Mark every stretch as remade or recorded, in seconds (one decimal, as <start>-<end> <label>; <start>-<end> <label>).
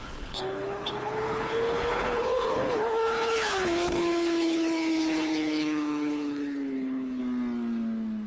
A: 0.0-7.2 remade; 7.2-8.3 recorded